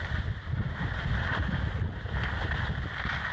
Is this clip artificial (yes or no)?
no